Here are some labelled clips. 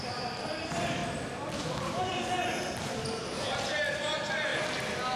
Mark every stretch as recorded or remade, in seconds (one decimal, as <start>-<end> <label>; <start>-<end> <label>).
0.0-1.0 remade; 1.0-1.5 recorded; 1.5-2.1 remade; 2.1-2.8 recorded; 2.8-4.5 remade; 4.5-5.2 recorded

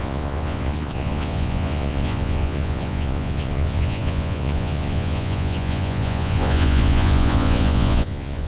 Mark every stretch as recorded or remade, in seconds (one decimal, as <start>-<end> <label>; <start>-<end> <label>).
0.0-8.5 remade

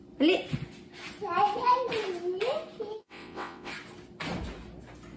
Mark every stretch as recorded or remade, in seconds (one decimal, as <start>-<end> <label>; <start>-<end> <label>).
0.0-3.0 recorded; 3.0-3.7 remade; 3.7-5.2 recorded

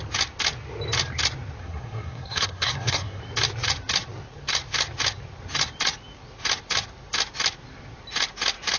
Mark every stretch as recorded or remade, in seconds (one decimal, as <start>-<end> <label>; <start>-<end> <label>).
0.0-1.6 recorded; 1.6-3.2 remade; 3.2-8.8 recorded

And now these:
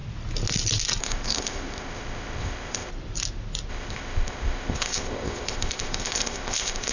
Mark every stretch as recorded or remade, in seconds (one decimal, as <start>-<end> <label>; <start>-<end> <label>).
0.0-1.0 recorded; 1.0-2.9 remade; 2.9-3.7 recorded; 3.7-6.9 remade

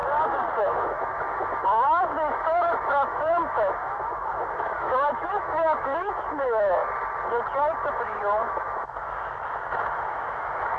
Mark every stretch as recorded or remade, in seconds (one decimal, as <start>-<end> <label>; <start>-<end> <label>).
0.0-0.6 recorded; 0.6-6.8 remade; 6.8-7.9 recorded; 7.9-10.8 remade

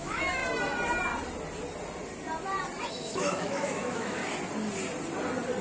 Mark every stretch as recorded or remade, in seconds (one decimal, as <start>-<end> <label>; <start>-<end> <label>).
0.0-0.4 remade; 0.4-2.9 recorded; 2.9-4.2 remade; 4.2-5.6 recorded